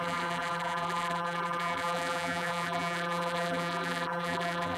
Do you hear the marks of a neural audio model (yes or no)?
yes